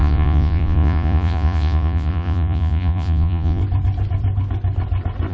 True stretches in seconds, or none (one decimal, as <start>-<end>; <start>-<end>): 3.6-5.3